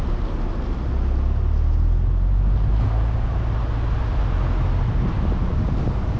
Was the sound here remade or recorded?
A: recorded